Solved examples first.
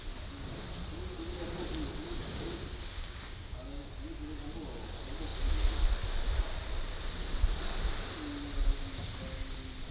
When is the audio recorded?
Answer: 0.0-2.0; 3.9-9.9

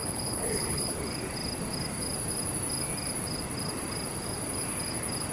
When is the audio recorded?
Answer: 0.9-5.3